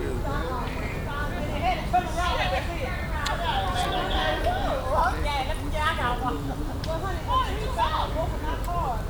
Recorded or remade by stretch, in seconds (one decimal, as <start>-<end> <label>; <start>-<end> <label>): 0.0-9.1 recorded